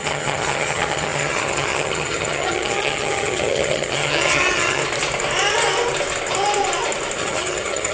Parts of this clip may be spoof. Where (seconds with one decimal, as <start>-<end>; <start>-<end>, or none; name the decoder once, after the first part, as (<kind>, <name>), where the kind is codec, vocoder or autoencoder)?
0.0-4.8 (vocoder, HiFi-GAN); 7.2-7.9